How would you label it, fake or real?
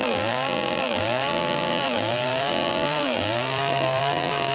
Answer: fake